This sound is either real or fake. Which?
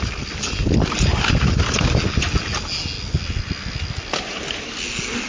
real